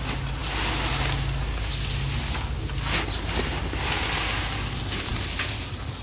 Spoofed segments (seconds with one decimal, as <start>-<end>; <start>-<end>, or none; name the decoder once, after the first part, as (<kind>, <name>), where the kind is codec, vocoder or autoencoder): none